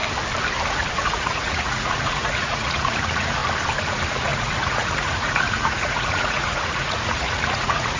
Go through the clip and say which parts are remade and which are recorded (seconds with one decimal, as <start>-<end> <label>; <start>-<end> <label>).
0.0-0.7 recorded; 0.7-3.4 remade; 3.4-3.9 recorded; 3.9-8.0 remade